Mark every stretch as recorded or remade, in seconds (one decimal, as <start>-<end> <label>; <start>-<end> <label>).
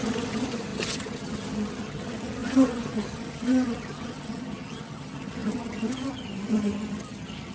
0.0-7.5 remade